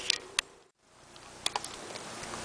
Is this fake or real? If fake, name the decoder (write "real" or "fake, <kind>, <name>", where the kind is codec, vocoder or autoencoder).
real